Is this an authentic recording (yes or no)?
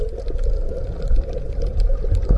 yes